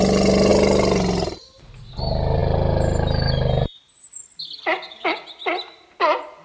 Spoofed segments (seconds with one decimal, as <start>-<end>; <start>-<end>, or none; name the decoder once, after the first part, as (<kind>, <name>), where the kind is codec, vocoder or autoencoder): none